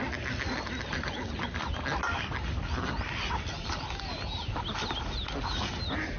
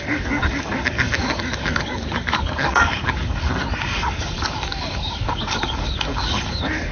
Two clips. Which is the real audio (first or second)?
first